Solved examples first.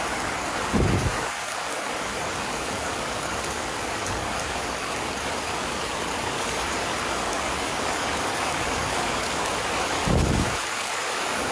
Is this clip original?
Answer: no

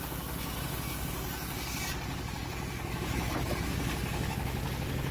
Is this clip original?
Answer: no